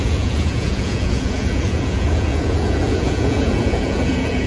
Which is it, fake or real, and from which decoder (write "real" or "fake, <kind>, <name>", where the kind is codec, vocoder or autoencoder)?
fake, vocoder, Vocos